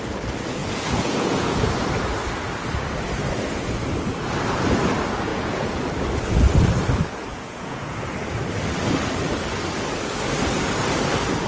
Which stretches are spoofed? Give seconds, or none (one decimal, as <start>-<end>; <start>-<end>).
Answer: 0.6-1.6; 5.3-5.8; 7.3-8.0